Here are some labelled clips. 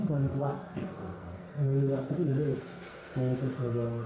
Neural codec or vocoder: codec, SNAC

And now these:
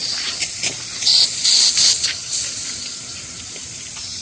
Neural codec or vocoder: none